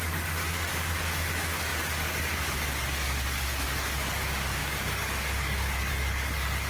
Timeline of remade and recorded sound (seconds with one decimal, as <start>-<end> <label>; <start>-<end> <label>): 0.0-6.7 remade